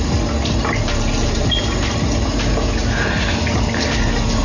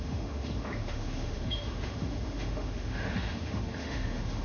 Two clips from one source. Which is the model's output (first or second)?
second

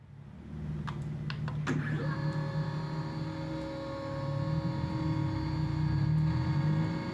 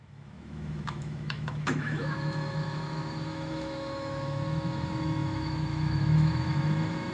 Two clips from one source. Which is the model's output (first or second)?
second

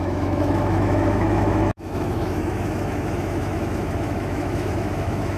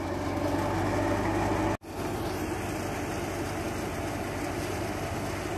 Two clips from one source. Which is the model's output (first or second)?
first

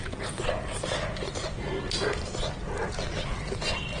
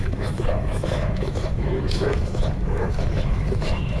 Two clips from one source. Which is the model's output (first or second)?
second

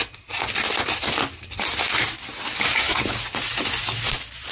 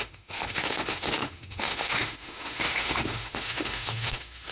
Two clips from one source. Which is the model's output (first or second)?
second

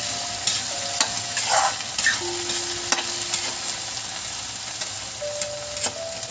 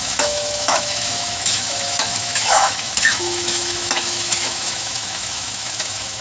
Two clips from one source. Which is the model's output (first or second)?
second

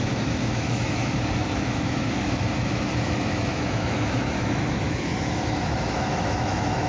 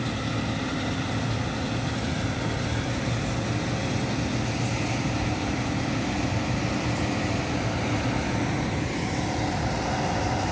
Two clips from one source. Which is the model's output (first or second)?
first